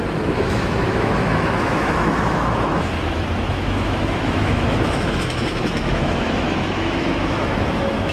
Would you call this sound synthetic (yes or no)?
yes